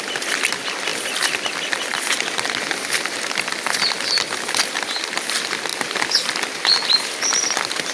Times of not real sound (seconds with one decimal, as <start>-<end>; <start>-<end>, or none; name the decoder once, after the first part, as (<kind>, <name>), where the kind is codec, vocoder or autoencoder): none